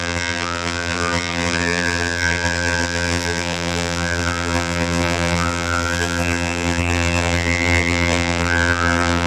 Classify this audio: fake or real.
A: fake